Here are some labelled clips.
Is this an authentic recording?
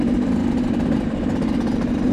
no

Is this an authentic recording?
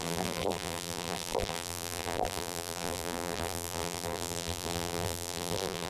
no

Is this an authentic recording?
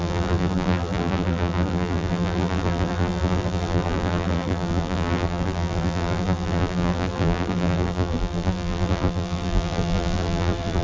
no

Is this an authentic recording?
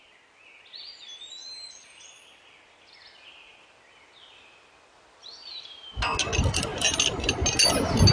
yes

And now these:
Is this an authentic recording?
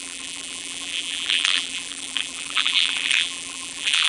no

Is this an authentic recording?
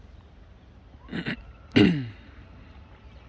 yes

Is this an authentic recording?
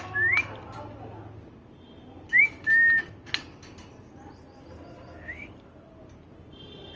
yes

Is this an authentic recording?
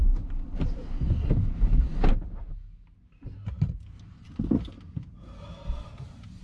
yes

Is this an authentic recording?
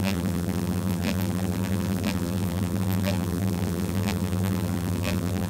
no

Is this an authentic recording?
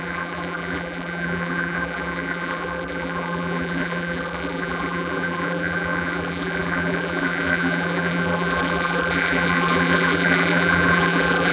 no